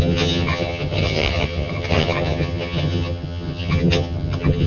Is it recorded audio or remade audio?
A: remade